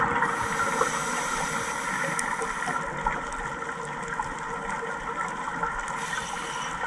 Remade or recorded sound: recorded